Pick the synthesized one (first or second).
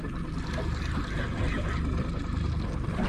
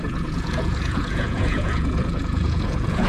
second